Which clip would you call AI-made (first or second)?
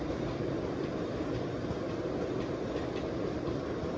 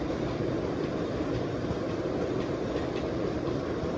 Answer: second